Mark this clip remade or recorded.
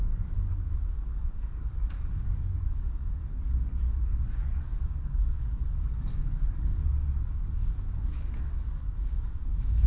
remade